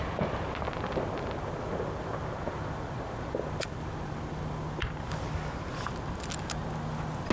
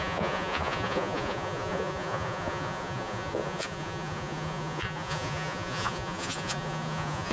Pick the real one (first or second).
first